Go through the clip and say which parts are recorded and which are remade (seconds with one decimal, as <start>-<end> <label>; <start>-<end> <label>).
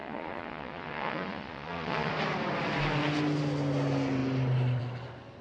0.0-2.1 remade; 2.1-5.4 recorded